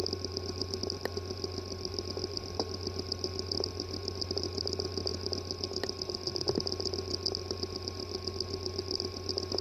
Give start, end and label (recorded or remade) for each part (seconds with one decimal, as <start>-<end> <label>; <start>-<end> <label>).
0.0-5.1 remade; 5.1-9.0 recorded; 9.0-9.6 remade